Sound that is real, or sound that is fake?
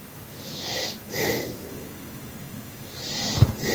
fake